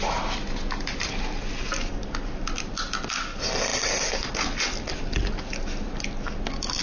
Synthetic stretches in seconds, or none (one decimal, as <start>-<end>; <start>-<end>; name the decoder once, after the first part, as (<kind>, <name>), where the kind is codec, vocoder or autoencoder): none